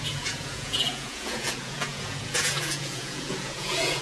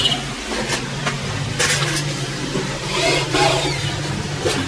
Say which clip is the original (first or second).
second